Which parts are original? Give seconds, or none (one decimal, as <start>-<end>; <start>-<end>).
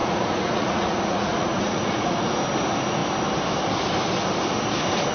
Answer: 2.3-5.1